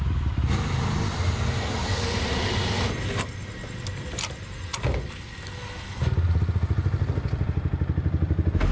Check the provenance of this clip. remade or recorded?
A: recorded